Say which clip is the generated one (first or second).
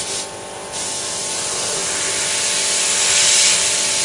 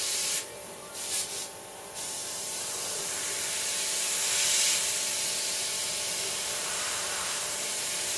second